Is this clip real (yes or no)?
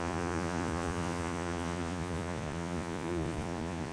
no